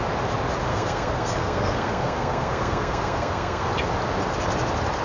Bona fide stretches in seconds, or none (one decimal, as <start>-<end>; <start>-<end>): 0.0-0.7; 3.7-5.0